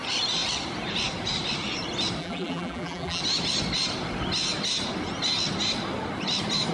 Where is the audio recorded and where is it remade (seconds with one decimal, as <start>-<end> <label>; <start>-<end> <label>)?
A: 0.0-2.2 recorded; 2.2-3.2 remade; 3.2-6.7 recorded